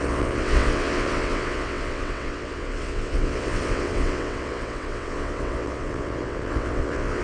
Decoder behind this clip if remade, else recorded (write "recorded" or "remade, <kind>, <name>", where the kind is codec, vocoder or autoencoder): remade, vocoder, WaveNeXt